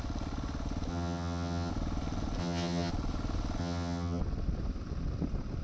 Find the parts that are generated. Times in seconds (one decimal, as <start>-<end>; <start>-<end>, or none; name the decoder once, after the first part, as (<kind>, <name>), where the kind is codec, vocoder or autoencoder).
0.9-1.7 (vocoder, HiFi-GAN); 2.4-2.9; 3.6-4.2